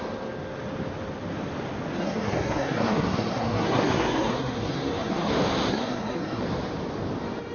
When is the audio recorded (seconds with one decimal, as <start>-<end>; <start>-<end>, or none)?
0.0-2.0; 5.3-5.7; 6.4-7.5